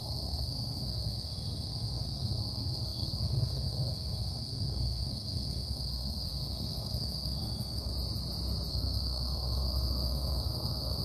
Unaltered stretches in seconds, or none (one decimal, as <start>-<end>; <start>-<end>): 7.9-8.7